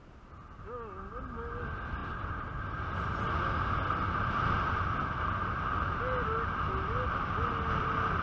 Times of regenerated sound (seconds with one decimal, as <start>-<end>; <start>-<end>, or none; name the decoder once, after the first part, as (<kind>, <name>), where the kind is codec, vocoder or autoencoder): none